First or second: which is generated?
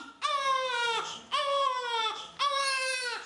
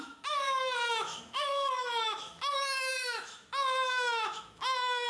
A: second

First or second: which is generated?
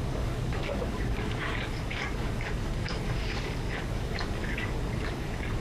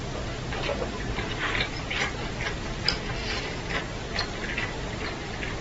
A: first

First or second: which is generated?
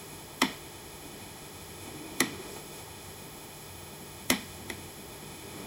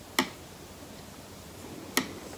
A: first